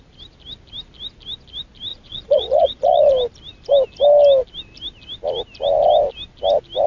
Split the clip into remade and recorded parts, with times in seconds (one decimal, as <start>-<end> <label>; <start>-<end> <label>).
0.0-1.9 recorded; 1.9-3.1 remade; 3.1-6.9 recorded